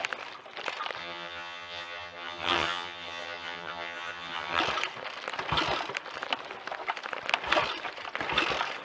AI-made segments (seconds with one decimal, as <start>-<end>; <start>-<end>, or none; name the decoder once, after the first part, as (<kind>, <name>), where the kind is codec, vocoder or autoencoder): 1.0-4.6 (vocoder, HiFi-GAN)